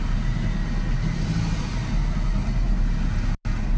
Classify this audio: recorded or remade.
recorded